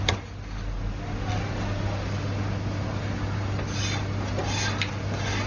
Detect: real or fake real